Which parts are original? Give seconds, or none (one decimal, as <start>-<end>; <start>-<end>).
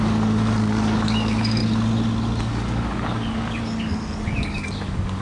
1.6-2.4